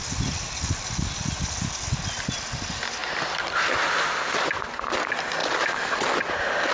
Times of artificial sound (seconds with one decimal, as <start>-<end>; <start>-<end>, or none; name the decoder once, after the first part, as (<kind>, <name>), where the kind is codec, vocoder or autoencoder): none